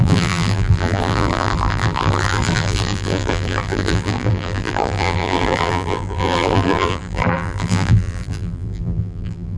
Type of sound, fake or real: fake